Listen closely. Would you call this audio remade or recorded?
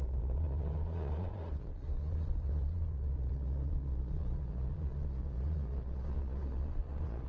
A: remade